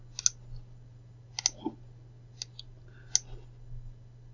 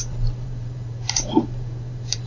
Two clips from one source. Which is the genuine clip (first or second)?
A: first